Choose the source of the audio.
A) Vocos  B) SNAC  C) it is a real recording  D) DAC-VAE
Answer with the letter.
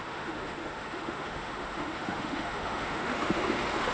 D